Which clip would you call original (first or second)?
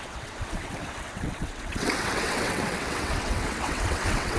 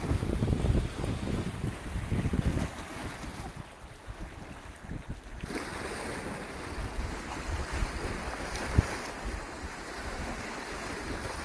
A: second